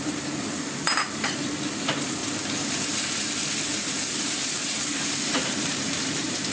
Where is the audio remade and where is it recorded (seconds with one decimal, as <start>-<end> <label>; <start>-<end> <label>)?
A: 0.0-2.2 remade; 2.2-4.1 recorded; 4.1-6.5 remade